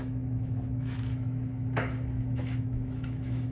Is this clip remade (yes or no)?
yes